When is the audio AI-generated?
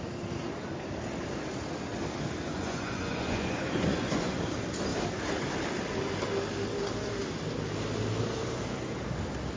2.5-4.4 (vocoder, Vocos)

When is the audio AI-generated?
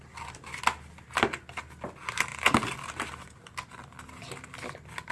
none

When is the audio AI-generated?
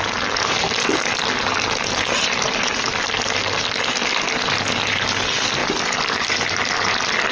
5.6-7.3 (vocoder, BigVGAN v2)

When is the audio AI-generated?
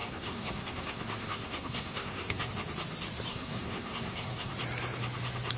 0.0-2.5 (codec, SNAC); 3.3-4.5